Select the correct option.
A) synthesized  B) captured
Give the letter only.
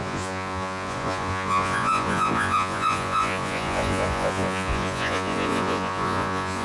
A